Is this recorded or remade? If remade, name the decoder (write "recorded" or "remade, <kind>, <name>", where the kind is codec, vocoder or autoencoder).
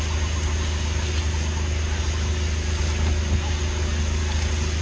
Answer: recorded